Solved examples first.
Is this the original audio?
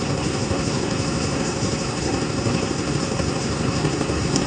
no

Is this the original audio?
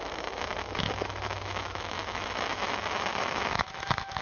no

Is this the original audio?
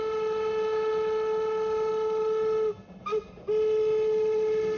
yes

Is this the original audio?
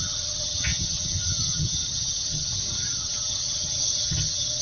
no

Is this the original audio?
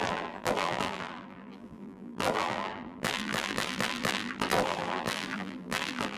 no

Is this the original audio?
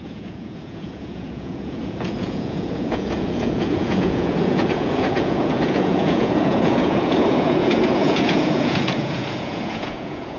no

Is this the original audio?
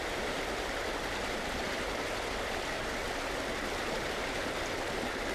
yes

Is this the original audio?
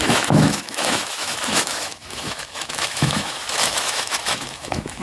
no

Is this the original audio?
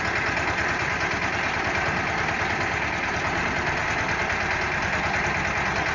yes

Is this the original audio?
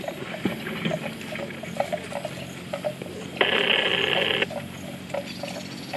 yes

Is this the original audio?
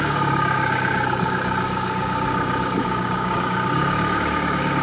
no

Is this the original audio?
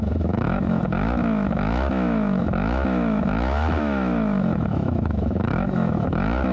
no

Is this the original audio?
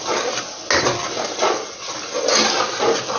yes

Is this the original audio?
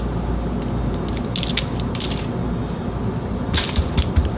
yes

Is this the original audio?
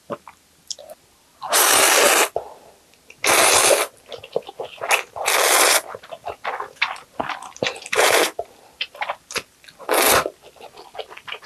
yes